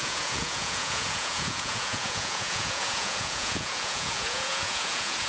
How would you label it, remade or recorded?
remade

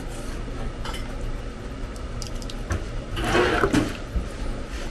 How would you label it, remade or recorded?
recorded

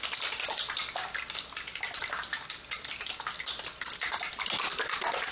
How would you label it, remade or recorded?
recorded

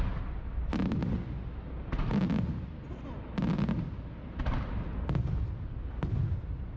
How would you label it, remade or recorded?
recorded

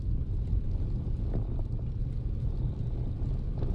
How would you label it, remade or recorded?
recorded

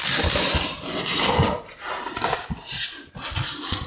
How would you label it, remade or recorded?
recorded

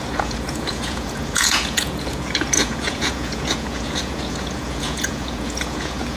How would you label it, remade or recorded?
remade